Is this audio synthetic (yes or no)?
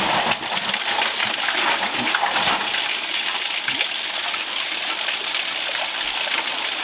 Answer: no